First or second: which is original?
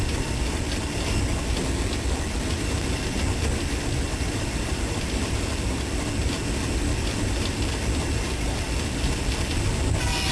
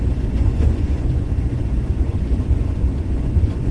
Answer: first